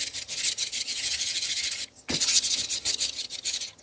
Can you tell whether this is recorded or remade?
remade